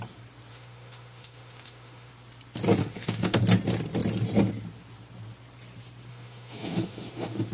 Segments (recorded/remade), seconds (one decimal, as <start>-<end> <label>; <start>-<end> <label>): 0.0-0.5 recorded; 0.5-2.1 remade; 2.1-2.8 recorded; 2.8-3.4 remade; 3.4-6.1 recorded; 6.1-7.5 remade